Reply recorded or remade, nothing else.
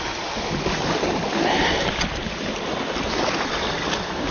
recorded